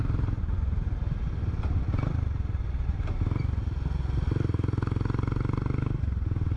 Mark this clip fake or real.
real